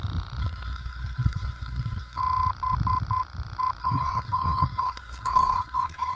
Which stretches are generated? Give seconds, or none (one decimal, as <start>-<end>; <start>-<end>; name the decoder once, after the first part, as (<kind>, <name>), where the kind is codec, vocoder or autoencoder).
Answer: 0.4-2.2 (codec, SNAC); 3.8-6.2